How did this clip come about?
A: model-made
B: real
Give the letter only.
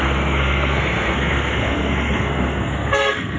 A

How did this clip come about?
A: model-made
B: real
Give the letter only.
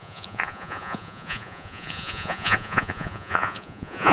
A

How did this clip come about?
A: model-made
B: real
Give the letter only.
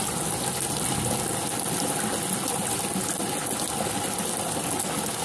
B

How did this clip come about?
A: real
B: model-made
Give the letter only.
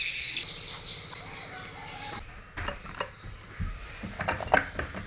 A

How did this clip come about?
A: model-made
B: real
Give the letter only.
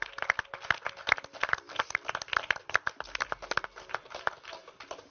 B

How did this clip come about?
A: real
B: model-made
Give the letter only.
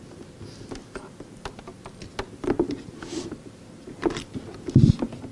A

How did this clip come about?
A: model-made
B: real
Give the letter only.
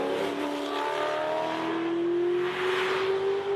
B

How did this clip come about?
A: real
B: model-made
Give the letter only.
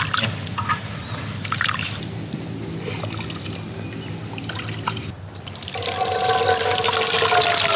A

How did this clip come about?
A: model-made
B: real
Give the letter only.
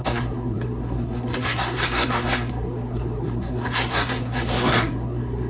A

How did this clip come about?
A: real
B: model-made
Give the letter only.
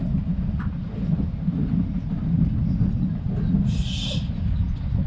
A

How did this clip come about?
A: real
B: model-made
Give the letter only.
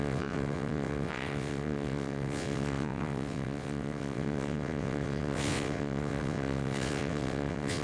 B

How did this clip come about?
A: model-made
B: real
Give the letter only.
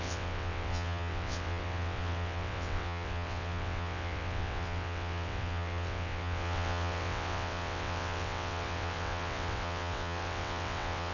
A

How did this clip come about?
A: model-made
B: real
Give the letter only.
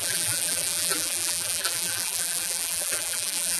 A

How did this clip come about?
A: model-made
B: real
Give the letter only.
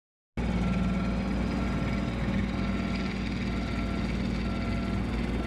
B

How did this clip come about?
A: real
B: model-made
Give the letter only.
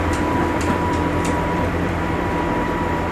B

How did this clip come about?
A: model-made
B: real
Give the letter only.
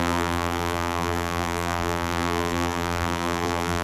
A